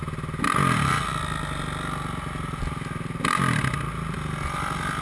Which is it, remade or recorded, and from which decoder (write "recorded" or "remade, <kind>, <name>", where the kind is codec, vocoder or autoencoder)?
recorded